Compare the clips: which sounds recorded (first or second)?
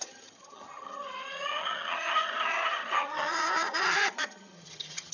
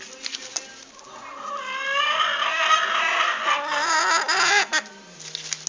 second